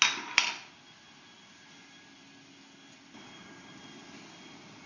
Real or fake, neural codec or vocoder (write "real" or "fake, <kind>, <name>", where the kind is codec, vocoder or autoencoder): real